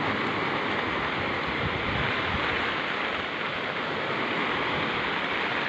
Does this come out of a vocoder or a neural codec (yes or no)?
no